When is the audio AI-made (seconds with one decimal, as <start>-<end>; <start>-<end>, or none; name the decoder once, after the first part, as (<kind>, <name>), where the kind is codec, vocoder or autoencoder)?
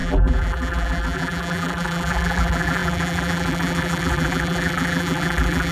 0.0-5.7 (vocoder, BigVGAN v2)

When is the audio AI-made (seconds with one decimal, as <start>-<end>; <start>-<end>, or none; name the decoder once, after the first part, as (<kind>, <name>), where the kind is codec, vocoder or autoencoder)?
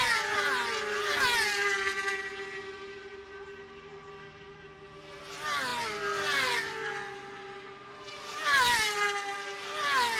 none